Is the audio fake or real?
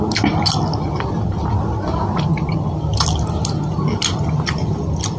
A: real